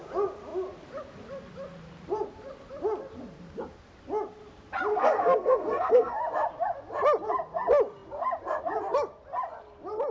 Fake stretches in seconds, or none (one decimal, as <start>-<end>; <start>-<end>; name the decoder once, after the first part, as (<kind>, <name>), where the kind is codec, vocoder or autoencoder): 4.9-6.2 (codec, SNAC)